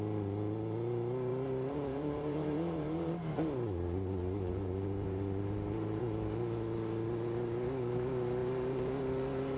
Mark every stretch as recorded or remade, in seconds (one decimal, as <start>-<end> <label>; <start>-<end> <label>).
0.0-1.3 recorded; 1.3-6.0 remade; 6.0-8.4 recorded; 8.4-9.0 remade; 9.0-9.6 recorded